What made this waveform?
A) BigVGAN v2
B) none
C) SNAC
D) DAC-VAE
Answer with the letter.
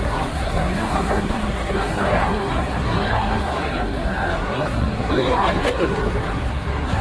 C